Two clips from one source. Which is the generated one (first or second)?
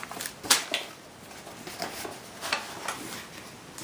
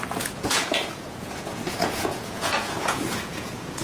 second